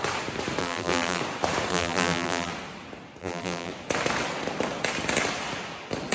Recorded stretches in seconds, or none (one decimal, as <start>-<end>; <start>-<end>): 0.0-0.6; 1.2-1.7; 2.5-3.2; 3.7-6.1